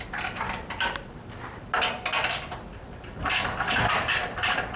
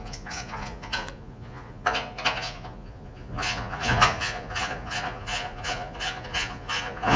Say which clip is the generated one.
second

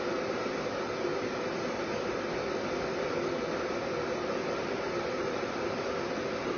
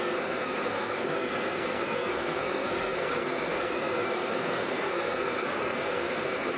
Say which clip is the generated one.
second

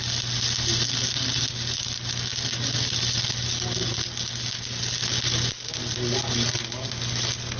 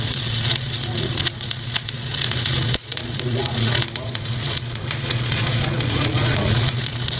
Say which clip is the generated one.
second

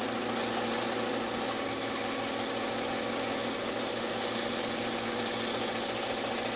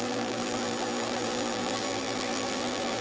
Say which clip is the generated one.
second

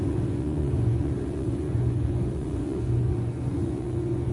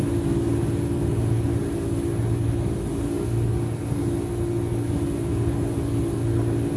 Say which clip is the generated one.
first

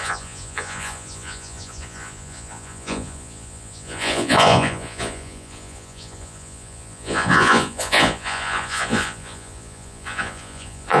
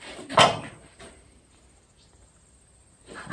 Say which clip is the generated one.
first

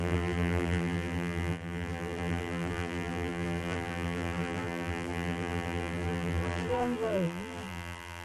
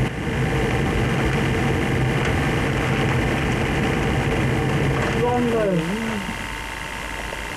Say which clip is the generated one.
first